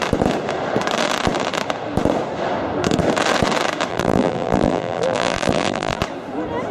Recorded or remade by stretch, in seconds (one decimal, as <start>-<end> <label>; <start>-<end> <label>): 0.0-3.9 recorded; 3.9-6.0 remade; 6.0-6.7 recorded